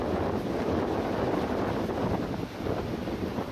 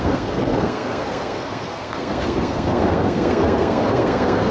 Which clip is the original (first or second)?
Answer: first